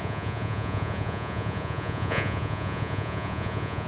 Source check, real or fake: fake